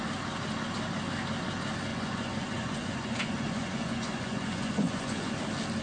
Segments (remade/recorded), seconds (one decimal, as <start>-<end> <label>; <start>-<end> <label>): 0.0-1.9 recorded; 1.9-5.3 remade; 5.3-5.8 recorded